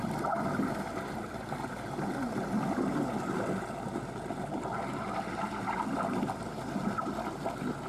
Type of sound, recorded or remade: recorded